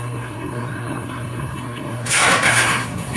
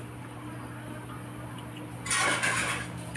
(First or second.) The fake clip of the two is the first